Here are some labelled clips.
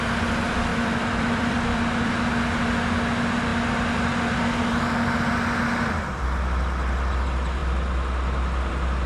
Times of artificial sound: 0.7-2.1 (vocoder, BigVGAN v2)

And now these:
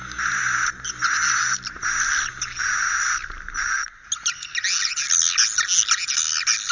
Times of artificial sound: none

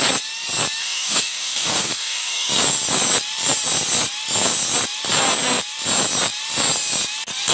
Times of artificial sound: 0.8-2.5 (codec, DAC)

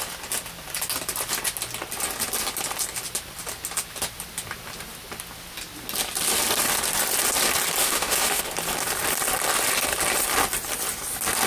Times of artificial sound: 7.8-8.4 (autoencoder, DAC-VAE)

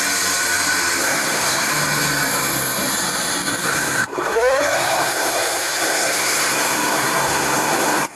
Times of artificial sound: 1.0-1.7 (codec, SNAC); 3.6-8.2

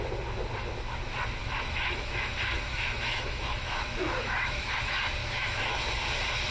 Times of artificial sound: 1.4-2.3 (autoencoder, DAC-VAE); 2.7-4.7; 5.2-5.8